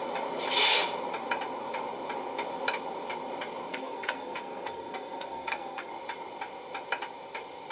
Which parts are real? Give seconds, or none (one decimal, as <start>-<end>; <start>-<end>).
0.0-3.7; 5.9-7.7